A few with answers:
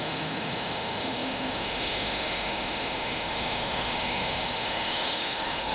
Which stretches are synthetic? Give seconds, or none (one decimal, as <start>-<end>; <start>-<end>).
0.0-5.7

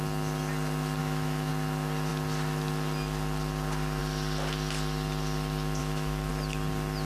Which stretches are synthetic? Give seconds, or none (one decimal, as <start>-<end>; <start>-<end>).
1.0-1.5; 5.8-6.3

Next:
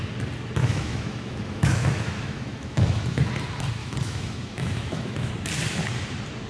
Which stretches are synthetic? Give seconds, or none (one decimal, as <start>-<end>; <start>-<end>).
0.6-3.3; 3.8-5.3

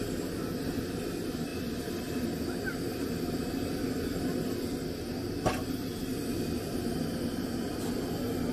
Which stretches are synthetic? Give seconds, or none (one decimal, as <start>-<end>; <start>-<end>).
none

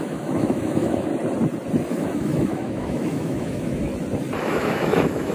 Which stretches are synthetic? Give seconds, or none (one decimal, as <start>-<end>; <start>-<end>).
0.0-1.1; 1.9-3.9; 4.4-5.3

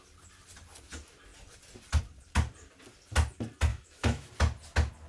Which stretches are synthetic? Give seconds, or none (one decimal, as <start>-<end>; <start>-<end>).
3.7-4.3

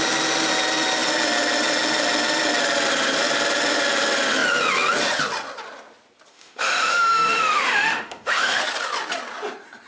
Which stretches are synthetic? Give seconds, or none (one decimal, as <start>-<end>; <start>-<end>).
6.3-8.6